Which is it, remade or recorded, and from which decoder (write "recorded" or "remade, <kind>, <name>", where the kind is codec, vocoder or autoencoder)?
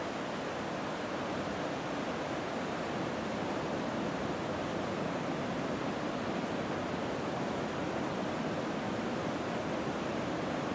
remade, vocoder, BigVGAN v2